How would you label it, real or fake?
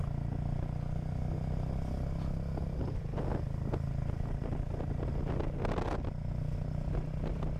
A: real